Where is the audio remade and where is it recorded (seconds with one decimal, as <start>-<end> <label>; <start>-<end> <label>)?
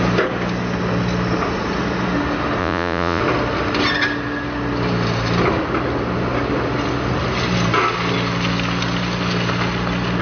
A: 0.0-2.6 recorded; 2.6-3.2 remade; 3.2-10.2 recorded